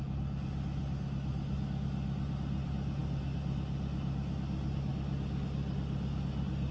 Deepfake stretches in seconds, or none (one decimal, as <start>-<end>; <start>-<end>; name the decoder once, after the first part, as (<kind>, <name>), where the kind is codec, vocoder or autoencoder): none